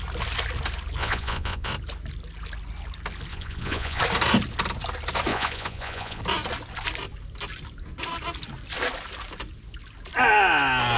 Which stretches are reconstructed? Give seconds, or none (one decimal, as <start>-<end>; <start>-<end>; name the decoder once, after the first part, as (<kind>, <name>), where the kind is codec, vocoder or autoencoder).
1.0-1.7 (vocoder, Vocos); 3.3-4.0; 5.3-6.2